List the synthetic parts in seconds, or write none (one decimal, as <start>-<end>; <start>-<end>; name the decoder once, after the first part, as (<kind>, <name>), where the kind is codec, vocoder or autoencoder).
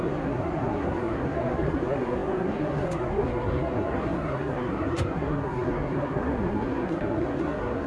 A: 0.0-7.9 (codec, SNAC)